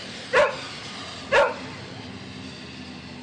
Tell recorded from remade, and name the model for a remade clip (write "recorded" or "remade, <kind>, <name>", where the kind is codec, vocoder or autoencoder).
recorded